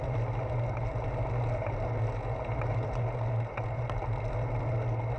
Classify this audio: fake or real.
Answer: real